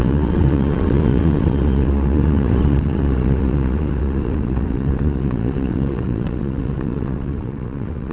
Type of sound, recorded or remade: remade